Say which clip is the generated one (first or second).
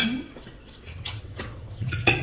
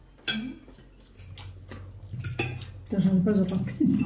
first